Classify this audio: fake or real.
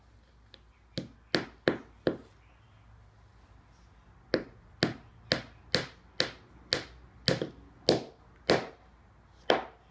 real